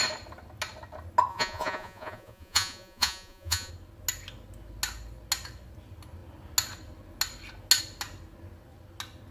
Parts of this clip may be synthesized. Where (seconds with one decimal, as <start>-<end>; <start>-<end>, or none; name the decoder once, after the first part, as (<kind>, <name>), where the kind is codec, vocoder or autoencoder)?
1.3-3.7 (vocoder, Vocos)